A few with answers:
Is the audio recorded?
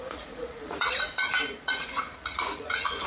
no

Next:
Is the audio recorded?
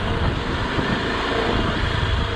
yes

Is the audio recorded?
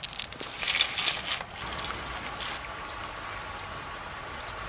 yes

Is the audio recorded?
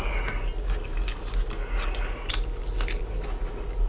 yes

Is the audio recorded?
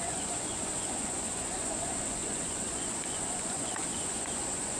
no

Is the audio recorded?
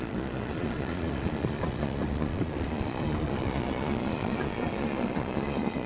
no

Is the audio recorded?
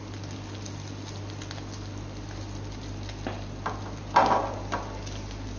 yes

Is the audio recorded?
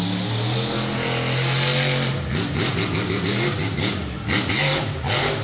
yes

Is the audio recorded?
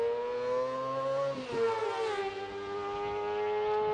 yes